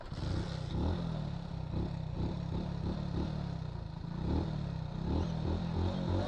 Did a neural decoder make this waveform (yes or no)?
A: no